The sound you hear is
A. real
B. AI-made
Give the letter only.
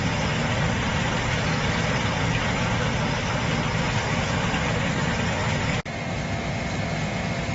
A